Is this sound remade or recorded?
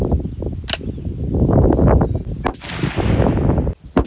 recorded